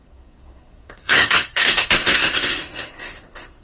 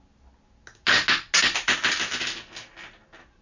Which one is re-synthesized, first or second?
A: first